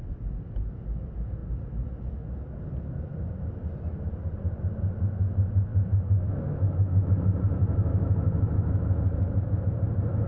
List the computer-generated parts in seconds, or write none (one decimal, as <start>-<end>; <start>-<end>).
5.7-7.1; 7.6-9.6